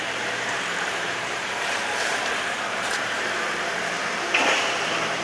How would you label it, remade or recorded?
remade